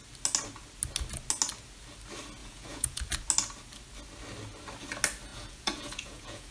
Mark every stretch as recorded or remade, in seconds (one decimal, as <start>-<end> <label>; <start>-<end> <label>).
0.0-2.4 recorded; 2.4-3.0 remade; 3.0-5.3 recorded; 5.3-6.5 remade